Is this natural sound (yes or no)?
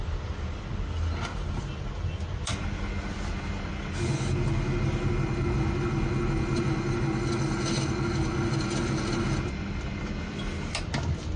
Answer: yes